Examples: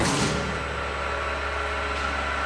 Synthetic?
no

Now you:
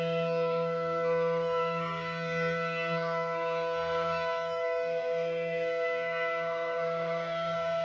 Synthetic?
yes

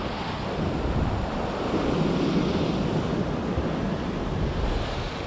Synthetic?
no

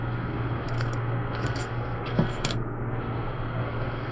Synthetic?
yes